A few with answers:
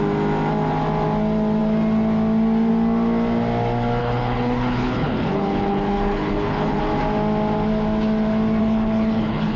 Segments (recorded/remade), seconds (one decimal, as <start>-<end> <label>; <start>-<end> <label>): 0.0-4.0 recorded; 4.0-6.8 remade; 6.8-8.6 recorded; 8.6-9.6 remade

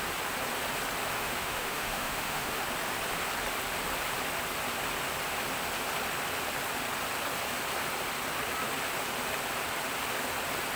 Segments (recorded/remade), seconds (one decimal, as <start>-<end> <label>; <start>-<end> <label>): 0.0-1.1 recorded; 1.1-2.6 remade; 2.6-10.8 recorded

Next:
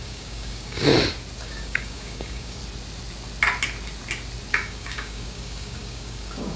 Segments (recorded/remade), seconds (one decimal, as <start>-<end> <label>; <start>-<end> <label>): 0.0-0.9 remade; 0.9-1.4 recorded; 1.4-2.6 remade; 2.6-4.5 recorded; 4.5-6.6 remade